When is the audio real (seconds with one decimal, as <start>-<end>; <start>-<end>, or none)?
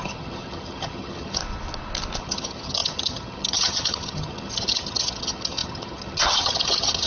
1.4-2.2